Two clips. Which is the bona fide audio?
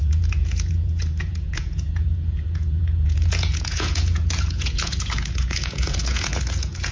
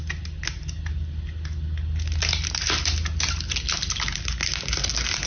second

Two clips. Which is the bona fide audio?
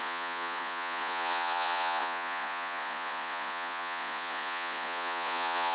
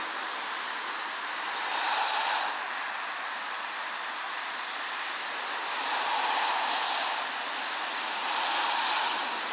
second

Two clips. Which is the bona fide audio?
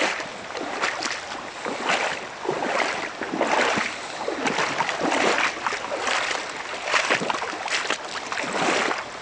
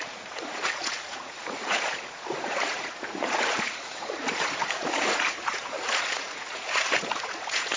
first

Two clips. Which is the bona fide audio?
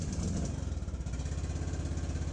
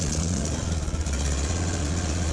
first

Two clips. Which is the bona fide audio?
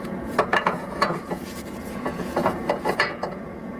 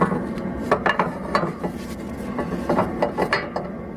second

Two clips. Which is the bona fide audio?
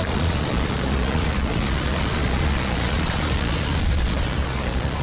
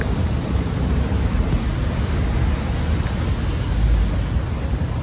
second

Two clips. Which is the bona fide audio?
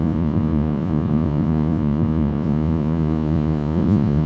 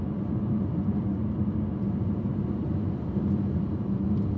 second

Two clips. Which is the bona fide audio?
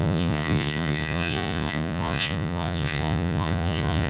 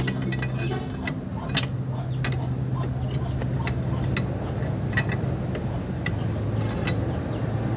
second